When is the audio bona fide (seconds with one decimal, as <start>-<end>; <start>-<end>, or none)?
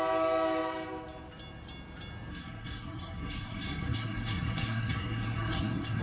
0.0-2.3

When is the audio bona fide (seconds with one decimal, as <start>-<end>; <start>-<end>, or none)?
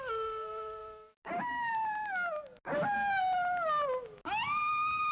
0.0-5.1